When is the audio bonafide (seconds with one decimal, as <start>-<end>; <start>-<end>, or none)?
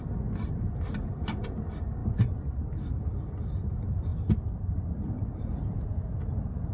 0.0-6.7